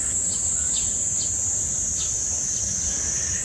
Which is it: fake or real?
real